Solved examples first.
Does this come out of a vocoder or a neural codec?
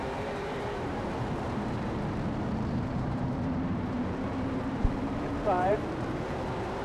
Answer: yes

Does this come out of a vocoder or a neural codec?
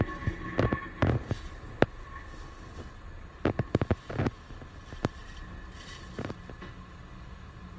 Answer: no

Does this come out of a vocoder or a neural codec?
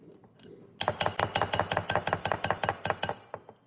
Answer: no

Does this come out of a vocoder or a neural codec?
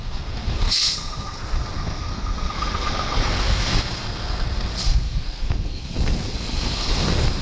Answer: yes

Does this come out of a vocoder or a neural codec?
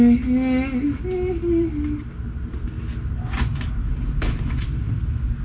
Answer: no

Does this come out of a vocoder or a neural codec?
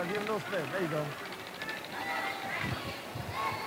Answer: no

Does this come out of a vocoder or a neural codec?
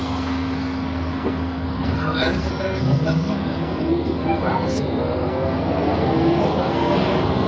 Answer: yes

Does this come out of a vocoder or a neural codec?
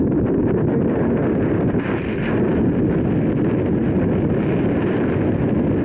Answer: no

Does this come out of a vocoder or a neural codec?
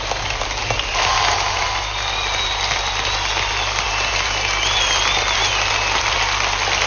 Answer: no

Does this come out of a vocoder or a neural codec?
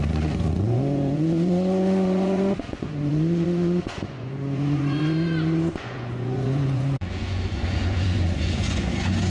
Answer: yes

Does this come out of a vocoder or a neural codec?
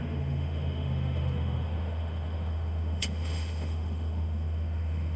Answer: yes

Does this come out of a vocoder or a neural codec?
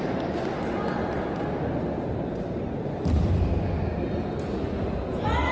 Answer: no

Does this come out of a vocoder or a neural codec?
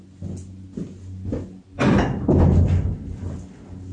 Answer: no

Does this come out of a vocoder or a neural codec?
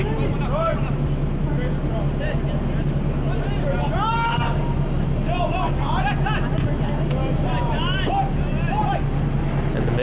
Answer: no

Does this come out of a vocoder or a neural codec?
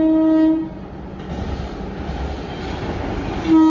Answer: no